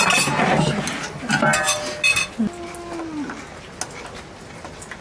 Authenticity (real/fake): real